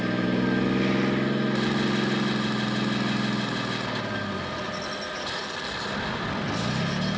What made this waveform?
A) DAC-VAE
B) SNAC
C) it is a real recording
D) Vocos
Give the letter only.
C